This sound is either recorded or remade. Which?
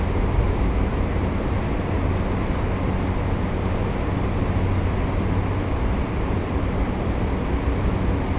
recorded